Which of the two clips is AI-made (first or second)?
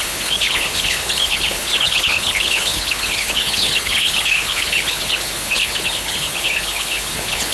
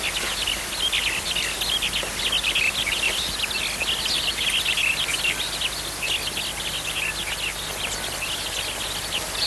first